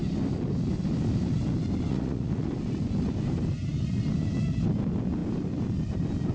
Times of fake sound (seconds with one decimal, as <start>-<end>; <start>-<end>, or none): 1.9-2.5